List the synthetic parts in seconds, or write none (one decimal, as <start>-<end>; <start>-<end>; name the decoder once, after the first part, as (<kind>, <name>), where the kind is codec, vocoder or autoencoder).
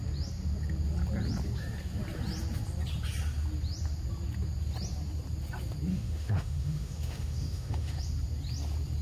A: 5.9-8.0 (autoencoder, DAC-VAE)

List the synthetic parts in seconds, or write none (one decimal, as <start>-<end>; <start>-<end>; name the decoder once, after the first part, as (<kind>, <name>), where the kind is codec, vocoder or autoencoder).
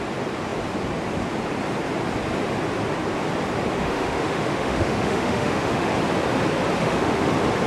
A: 3.8-5.9 (autoencoder, DAC-VAE); 6.8-7.3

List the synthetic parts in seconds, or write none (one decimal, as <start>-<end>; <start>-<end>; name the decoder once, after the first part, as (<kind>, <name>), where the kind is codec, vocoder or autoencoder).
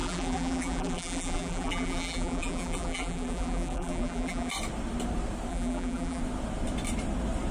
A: 0.0-4.5 (vocoder, BigVGAN v2); 5.5-6.2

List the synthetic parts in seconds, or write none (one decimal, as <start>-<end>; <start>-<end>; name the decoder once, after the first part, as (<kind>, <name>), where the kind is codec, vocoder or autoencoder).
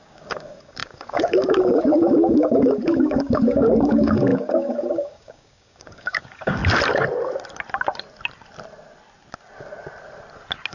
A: 0.0-6.6 (codec, DAC)